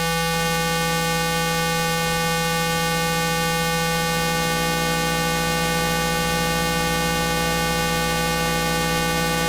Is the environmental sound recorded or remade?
recorded